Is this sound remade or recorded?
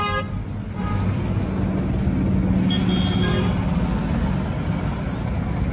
recorded